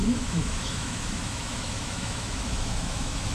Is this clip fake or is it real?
fake